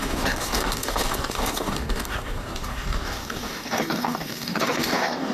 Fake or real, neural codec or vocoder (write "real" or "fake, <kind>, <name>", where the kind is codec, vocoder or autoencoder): fake, codec, DAC